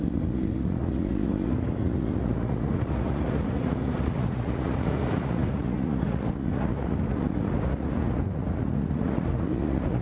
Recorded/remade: remade